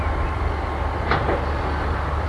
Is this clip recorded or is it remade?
recorded